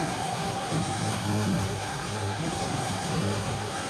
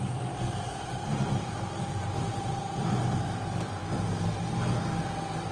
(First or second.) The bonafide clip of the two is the second